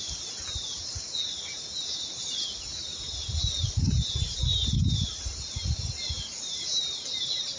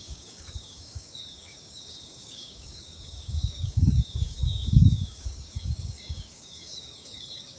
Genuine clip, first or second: first